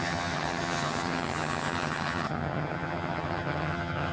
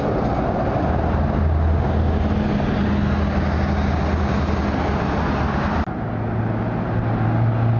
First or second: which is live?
second